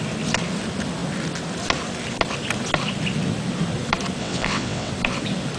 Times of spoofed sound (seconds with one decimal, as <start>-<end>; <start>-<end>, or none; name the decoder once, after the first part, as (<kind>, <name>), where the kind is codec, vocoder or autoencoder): 4.2-4.9 (vocoder, WaveNeXt)